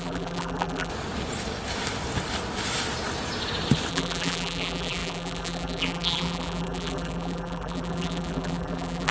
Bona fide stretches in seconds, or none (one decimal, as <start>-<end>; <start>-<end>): 0.9-3.9